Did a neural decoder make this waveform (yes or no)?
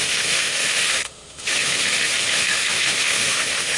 yes